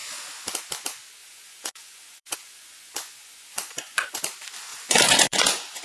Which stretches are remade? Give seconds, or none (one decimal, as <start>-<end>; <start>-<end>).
1.2-4.2; 4.7-5.8